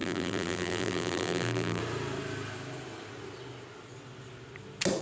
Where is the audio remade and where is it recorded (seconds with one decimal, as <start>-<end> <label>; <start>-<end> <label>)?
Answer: 0.0-1.8 remade; 1.8-5.0 recorded

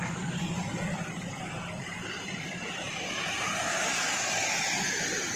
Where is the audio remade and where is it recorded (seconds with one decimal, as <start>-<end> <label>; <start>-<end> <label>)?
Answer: 0.0-2.0 recorded; 2.0-3.7 remade; 3.7-5.4 recorded

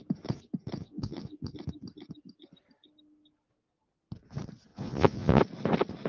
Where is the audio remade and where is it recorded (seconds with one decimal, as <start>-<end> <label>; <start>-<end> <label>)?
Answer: 0.0-0.8 recorded; 0.8-1.5 remade; 1.5-4.7 recorded; 4.7-5.4 remade; 5.4-6.1 recorded

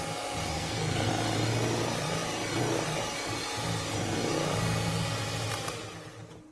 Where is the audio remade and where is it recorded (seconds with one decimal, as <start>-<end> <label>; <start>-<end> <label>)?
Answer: 0.0-0.4 recorded; 0.4-1.1 remade; 1.1-6.5 recorded

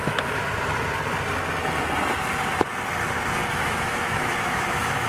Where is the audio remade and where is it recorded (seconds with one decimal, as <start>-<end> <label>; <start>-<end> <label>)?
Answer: 0.0-0.4 remade; 0.4-3.5 recorded; 3.5-5.1 remade

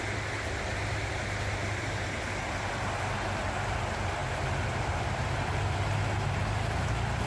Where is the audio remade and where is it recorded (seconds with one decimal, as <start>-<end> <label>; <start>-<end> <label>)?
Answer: 0.0-1.6 recorded; 1.6-2.2 remade; 2.2-7.3 recorded